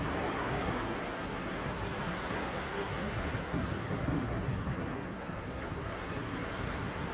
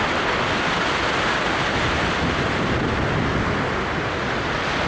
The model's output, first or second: first